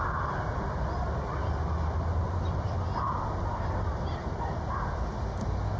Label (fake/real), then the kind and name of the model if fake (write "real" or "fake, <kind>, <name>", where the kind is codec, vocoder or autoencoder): real